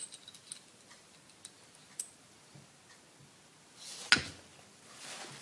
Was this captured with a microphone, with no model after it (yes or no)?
yes